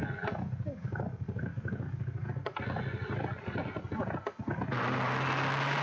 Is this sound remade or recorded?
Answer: recorded